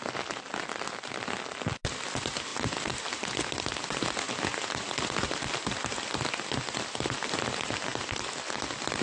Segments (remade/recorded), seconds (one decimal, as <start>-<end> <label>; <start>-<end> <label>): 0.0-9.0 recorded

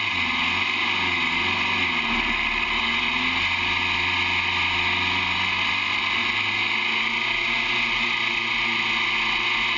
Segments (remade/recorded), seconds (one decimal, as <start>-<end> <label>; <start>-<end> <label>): 0.0-9.8 recorded

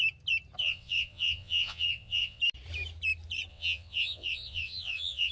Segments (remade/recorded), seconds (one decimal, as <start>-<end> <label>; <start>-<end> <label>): 0.0-0.6 recorded; 0.6-2.4 remade; 2.4-3.5 recorded; 3.5-5.3 remade

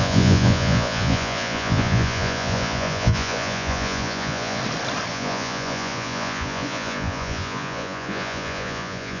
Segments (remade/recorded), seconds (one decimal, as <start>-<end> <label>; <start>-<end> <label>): 0.0-4.6 remade; 4.6-5.1 recorded; 5.1-9.2 remade

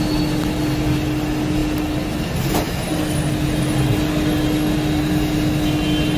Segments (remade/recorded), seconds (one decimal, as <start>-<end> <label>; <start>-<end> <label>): 0.0-6.2 recorded

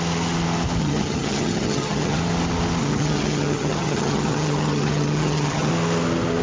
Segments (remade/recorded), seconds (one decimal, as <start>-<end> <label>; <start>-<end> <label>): 0.0-0.8 recorded; 0.8-2.2 remade; 2.2-2.8 recorded; 2.8-5.7 remade; 5.7-6.4 recorded

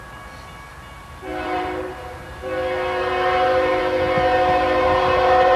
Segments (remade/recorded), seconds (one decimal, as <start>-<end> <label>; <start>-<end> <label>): 0.0-1.3 recorded; 1.3-2.4 remade; 2.4-3.0 recorded; 3.0-3.8 remade; 3.8-4.3 recorded; 4.3-5.6 remade

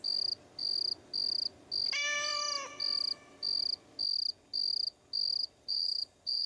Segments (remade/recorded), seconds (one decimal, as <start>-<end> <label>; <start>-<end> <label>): 0.0-5.4 recorded; 5.4-6.5 remade